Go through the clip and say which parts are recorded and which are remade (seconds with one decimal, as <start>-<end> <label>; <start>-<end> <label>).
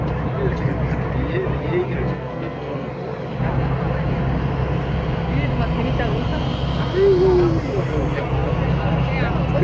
0.0-2.0 recorded; 2.0-2.9 remade; 2.9-9.6 recorded